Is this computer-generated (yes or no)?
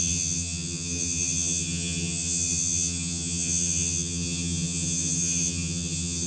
yes